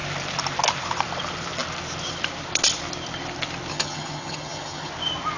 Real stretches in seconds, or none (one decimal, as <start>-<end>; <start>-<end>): 0.0-3.7; 4.9-5.4